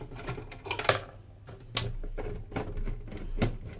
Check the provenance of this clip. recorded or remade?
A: recorded